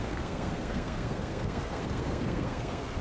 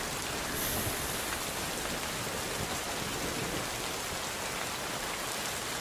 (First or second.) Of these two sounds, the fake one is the first